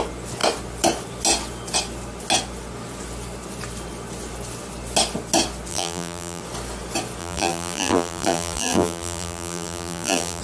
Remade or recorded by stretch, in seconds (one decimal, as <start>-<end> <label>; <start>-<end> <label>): 0.0-5.7 recorded; 5.7-6.4 remade; 6.4-7.2 recorded; 7.2-10.4 remade